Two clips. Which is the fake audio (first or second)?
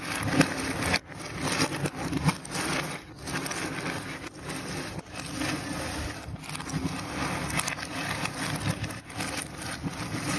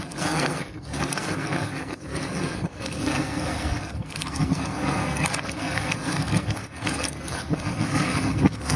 second